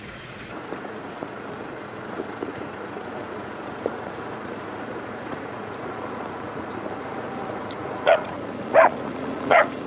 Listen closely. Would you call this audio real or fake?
fake